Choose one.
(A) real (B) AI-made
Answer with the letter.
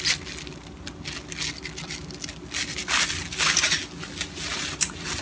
A